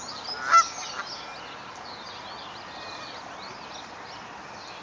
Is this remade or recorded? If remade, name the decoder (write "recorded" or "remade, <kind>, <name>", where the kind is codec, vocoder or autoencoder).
recorded